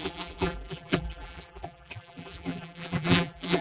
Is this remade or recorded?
remade